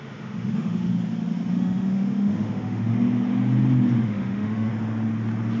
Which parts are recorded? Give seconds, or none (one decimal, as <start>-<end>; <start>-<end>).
0.9-1.5; 2.9-4.0; 4.7-5.6